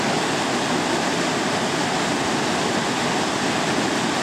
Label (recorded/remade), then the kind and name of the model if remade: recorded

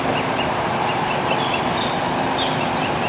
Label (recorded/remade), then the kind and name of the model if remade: recorded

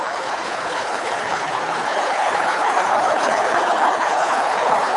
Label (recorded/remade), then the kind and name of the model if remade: remade, codec, HILCodec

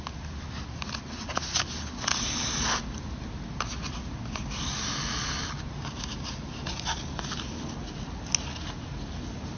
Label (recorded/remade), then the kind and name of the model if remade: recorded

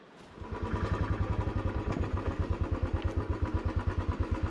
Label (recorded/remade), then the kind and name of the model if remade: recorded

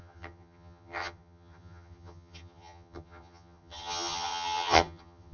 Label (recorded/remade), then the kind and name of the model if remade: remade, vocoder, HiFi-GAN